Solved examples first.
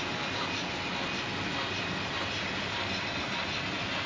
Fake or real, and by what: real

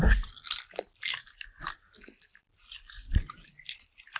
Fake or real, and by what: real